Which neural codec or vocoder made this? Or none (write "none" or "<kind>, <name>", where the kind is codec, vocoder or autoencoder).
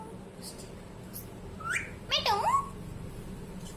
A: none